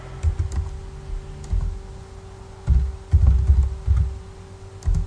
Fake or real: real